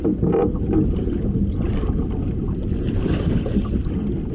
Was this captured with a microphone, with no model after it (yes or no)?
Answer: yes